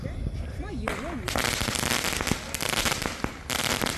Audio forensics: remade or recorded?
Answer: recorded